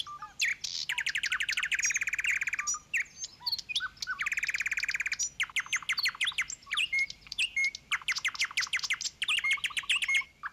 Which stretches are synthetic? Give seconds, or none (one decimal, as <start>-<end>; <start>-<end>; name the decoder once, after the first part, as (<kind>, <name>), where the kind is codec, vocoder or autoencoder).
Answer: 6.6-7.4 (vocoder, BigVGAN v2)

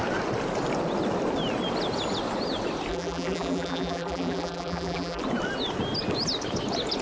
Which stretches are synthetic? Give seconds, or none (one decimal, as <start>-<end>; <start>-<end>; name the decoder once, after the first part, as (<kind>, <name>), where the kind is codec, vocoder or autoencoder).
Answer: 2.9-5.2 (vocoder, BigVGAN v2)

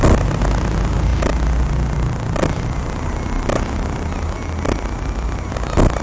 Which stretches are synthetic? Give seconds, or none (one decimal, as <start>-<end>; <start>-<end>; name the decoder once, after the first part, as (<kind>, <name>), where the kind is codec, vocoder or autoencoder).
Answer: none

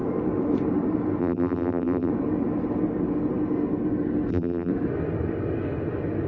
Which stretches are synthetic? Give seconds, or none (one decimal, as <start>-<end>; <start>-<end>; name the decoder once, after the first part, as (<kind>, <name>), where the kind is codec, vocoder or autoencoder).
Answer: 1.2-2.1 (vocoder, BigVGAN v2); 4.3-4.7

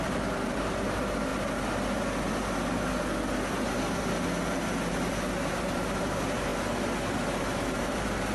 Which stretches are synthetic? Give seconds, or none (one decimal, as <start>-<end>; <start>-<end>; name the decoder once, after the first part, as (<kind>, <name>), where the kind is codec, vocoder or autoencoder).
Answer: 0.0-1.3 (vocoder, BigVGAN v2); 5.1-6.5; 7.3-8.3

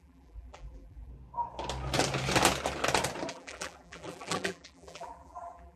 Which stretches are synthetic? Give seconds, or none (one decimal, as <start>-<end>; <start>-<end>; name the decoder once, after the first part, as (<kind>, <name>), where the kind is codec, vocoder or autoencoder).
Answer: 0.0-1.1 (vocoder, BigVGAN v2); 3.3-5.8

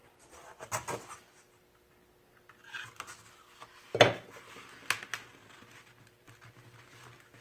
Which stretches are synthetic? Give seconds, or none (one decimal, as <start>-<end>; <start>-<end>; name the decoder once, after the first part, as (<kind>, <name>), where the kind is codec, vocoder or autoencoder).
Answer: none

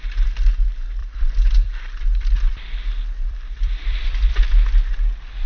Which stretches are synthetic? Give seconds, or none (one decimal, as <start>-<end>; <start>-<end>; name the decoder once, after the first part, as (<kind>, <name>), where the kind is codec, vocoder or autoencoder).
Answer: 1.0-4.3 (vocoder, BigVGAN v2)